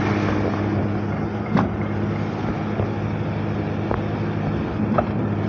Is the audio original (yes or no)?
yes